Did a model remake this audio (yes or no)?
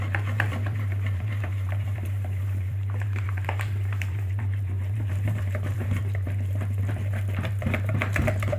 yes